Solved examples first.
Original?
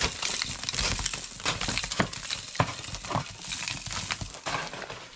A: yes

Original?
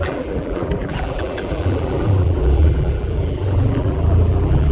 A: no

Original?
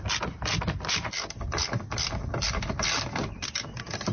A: no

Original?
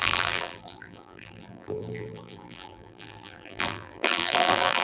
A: no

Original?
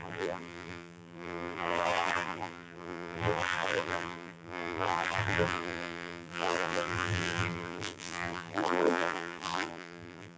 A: no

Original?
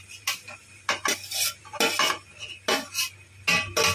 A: yes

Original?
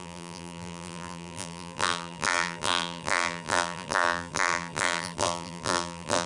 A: no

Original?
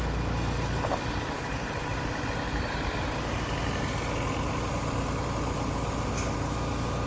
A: yes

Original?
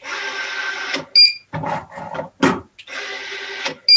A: yes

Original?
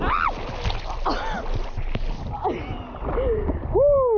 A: yes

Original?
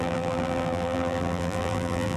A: no